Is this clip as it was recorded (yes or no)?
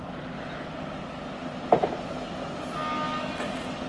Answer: yes